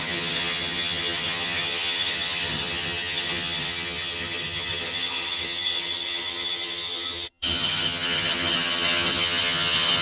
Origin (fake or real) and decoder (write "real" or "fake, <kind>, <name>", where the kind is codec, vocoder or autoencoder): fake, vocoder, HiFi-GAN